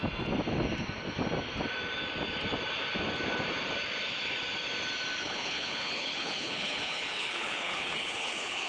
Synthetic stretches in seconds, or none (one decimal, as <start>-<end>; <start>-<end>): 5.2-8.7